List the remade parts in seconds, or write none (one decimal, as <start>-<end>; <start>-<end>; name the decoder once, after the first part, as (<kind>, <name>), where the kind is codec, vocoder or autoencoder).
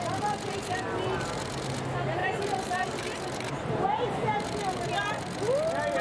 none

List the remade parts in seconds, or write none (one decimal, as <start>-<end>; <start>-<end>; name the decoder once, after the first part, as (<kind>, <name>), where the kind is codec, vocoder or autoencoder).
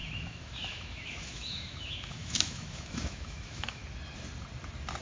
0.0-3.8 (autoencoder, DAC-VAE)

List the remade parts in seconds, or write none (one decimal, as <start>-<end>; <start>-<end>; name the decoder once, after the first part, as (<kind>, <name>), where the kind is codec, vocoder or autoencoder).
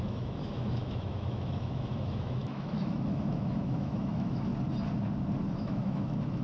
0.0-4.5 (autoencoder, DAC-VAE); 5.5-6.4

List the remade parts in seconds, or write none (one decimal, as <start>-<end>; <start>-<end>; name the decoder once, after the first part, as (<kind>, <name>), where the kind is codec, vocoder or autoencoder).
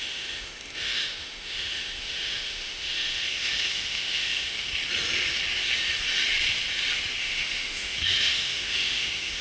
0.0-4.7 (autoencoder, DAC-VAE); 7.2-9.4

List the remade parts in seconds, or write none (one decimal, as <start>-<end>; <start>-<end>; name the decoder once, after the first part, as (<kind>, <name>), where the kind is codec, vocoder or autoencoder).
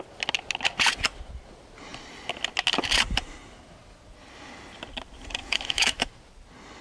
5.4-6.1 (autoencoder, DAC-VAE)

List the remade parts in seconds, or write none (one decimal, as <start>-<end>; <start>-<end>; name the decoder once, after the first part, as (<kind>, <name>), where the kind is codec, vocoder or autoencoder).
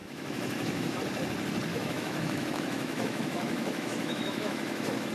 0.0-1.0 (autoencoder, DAC-VAE); 1.7-5.1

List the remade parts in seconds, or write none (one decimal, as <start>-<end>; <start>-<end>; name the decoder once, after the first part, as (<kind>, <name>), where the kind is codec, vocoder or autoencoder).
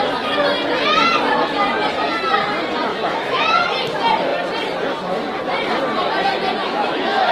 2.9-3.7 (autoencoder, DAC-VAE); 6.6-7.3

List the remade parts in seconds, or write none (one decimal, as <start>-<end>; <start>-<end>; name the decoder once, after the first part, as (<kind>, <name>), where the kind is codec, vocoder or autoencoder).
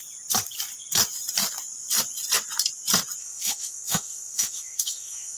3.2-5.4 (autoencoder, DAC-VAE)